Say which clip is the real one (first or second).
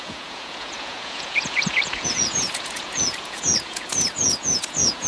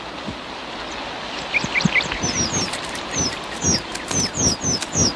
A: second